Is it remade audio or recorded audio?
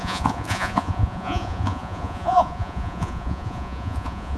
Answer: remade